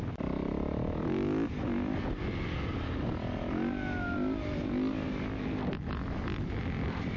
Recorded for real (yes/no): yes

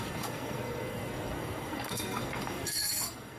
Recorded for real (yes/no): no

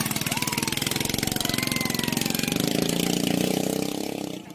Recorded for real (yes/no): yes